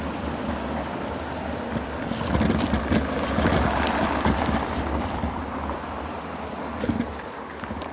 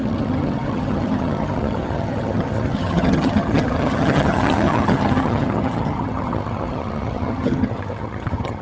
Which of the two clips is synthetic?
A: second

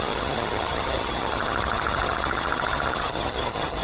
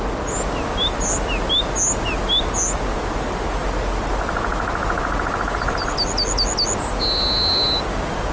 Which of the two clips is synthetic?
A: first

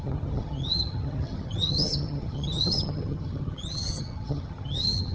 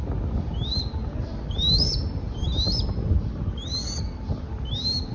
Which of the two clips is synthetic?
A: first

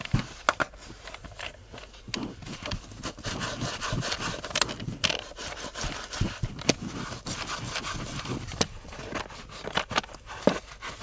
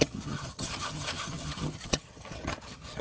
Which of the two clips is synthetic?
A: second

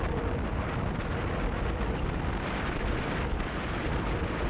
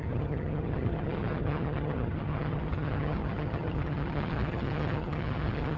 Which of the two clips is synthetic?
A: second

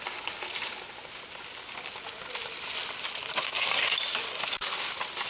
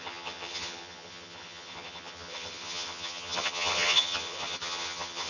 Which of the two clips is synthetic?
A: second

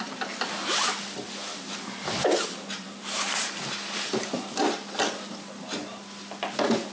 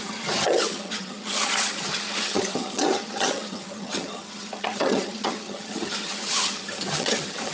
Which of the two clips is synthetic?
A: second